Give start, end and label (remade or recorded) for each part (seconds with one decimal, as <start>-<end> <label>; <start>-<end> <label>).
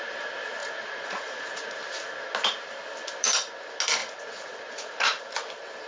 0.0-0.6 recorded; 0.6-1.8 remade; 1.8-4.0 recorded; 4.0-5.2 remade; 5.2-5.9 recorded